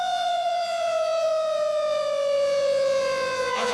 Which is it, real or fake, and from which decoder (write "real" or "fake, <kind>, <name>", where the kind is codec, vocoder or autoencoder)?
fake, vocoder, Vocos